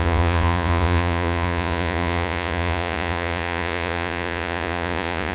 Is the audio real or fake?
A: fake